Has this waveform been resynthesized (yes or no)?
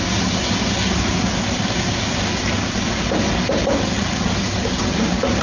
no